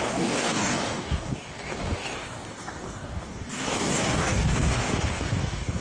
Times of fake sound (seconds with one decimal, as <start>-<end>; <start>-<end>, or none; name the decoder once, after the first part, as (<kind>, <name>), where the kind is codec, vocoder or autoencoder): 0.0-5.8 (codec, DAC)